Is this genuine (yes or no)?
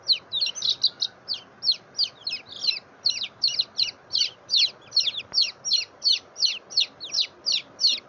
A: yes